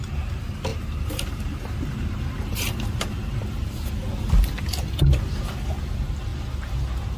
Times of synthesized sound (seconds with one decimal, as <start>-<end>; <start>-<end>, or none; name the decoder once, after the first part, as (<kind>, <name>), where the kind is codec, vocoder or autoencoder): 0.7-3.9 (vocoder, BigVGAN v2)